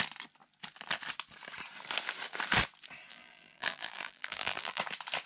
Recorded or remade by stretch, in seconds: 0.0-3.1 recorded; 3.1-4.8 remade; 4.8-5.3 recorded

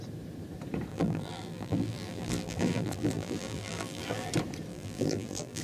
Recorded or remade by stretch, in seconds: 0.0-0.9 recorded; 0.9-4.3 remade; 4.3-4.7 recorded; 4.7-5.6 remade

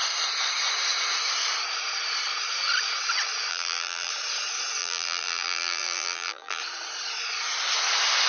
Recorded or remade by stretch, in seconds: 0.0-3.5 recorded; 3.5-4.1 remade; 4.1-4.8 recorded; 4.8-6.6 remade; 6.6-8.3 recorded

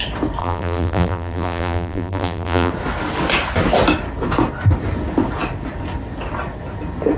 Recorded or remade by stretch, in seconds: 0.0-0.4 recorded; 0.4-2.7 remade; 2.7-7.2 recorded